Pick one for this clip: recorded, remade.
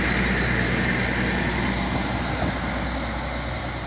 recorded